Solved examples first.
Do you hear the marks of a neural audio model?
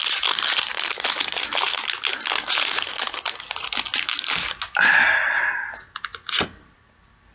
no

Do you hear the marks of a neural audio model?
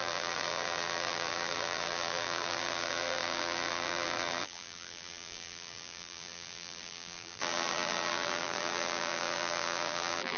yes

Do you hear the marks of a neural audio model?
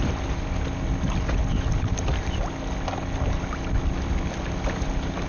no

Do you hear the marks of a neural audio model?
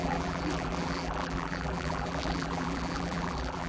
yes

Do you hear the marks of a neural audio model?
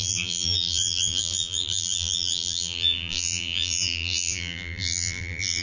yes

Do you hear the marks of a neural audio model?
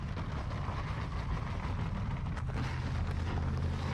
no